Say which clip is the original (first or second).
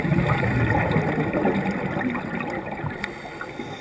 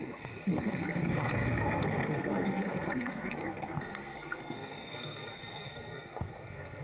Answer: first